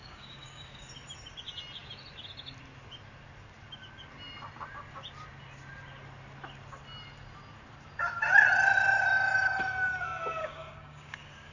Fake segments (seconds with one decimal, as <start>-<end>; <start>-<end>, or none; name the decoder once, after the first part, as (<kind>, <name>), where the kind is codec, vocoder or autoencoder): 0.0-0.9 (codec, DAC); 10.4-11.5